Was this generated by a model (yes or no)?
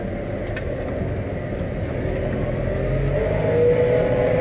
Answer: no